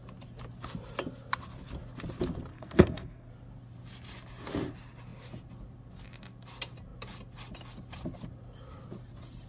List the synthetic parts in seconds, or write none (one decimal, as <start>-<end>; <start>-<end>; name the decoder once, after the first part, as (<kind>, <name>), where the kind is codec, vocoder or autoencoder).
2.5-3.3 (codec, SNAC)